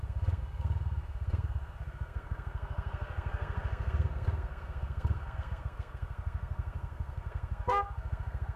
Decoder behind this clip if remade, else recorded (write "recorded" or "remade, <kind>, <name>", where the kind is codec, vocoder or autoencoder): remade, codec, SNAC